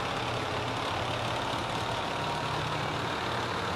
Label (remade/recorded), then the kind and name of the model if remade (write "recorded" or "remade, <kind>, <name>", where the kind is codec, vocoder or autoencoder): recorded